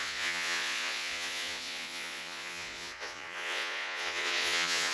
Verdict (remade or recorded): remade